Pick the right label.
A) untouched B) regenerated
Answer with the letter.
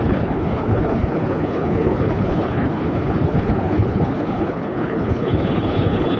B